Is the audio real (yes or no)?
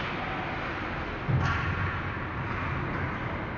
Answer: yes